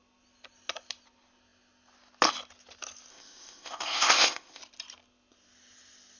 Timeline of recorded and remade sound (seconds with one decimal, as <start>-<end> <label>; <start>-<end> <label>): 0.0-3.1 recorded; 3.1-4.6 remade; 4.6-6.2 recorded